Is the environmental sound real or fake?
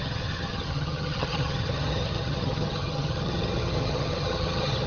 fake